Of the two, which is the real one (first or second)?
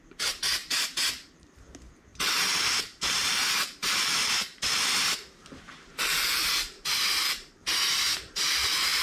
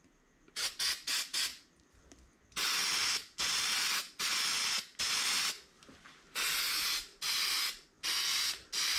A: second